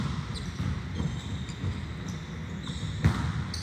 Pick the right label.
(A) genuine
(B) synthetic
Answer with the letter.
A